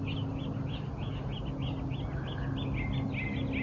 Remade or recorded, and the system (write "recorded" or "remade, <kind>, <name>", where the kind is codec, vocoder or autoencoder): recorded